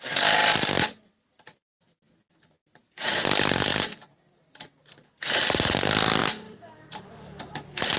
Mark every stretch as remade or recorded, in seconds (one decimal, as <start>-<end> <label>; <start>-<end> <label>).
0.0-0.4 recorded; 0.4-2.0 remade; 2.0-8.0 recorded